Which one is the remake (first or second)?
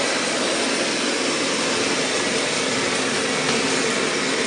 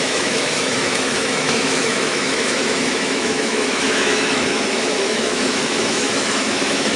second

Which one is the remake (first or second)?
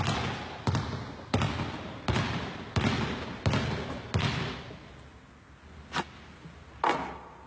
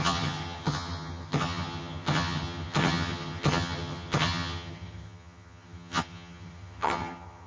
second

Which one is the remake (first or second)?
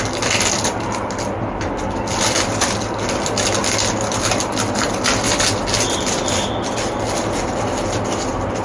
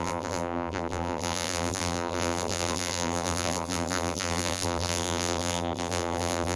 second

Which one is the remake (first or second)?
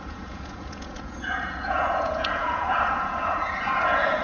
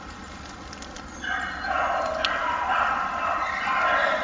first